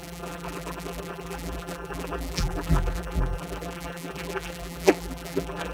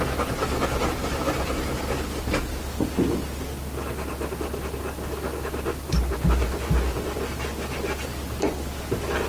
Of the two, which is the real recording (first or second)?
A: second